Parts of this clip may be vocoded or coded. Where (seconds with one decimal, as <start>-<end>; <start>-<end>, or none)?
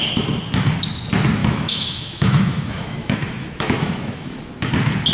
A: 1.4-4.4